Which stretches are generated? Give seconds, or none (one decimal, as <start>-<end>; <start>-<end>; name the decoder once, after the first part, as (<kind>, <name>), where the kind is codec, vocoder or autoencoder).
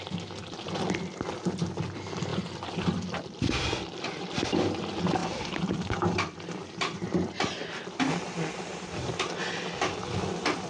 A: 2.3-4.3 (vocoder, BigVGAN v2); 5.2-7.3